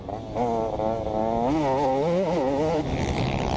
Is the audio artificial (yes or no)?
no